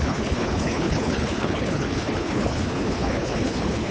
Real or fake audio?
fake